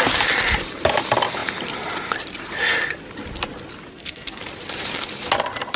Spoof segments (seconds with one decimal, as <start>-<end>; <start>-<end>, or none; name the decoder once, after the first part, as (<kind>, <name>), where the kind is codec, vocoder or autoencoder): 3.9-4.4 (codec, SNAC)